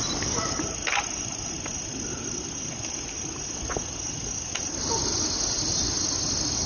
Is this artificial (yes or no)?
no